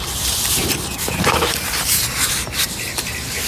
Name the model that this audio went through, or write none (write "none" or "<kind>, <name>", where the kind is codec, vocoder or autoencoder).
vocoder, BigVGAN v2